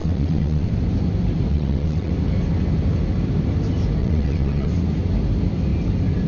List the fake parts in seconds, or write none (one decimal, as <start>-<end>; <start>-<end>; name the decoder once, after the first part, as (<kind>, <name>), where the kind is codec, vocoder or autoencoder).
0.0-0.7 (vocoder, WaveNeXt); 1.5-2.1; 4.0-4.7